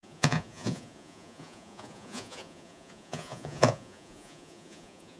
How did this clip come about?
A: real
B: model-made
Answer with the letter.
B